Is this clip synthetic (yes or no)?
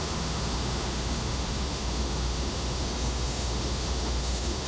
yes